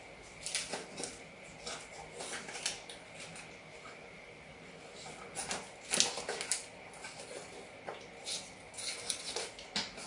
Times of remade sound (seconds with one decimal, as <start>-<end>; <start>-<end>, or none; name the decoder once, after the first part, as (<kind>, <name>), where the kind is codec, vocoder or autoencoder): none